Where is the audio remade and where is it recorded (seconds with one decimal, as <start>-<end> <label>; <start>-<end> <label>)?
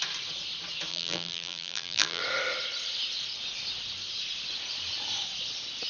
0.0-0.9 recorded; 0.9-2.2 remade; 2.2-5.9 recorded